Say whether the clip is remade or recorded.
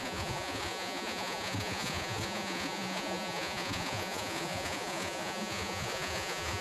remade